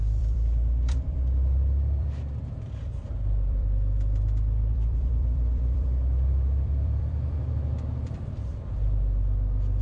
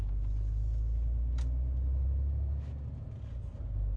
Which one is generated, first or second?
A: first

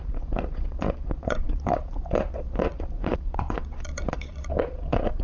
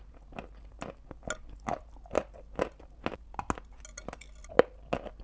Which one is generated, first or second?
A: first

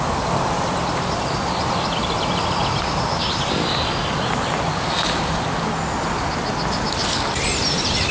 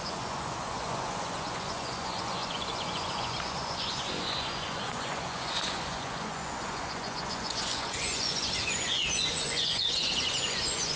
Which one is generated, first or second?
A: second